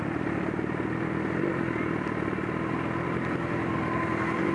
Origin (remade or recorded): recorded